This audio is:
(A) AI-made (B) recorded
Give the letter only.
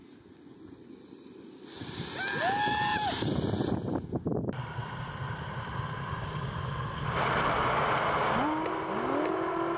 B